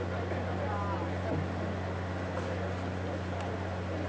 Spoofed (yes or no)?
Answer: no